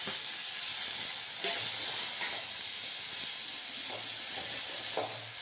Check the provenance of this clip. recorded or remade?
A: recorded